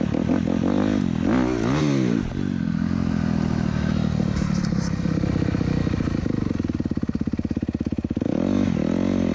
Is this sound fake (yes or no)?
no